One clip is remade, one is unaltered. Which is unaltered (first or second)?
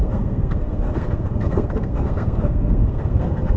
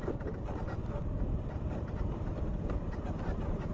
second